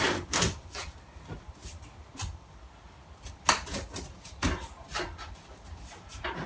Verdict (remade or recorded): recorded